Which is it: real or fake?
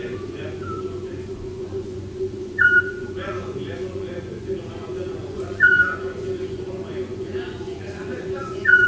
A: fake